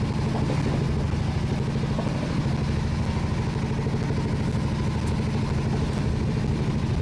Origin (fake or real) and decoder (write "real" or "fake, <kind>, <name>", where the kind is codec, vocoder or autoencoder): real